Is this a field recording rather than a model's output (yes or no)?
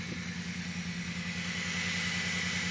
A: yes